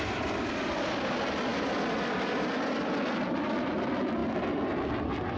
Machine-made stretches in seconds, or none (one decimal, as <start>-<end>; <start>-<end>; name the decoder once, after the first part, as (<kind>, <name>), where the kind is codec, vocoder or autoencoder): none